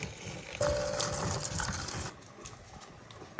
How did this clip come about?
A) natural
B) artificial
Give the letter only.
A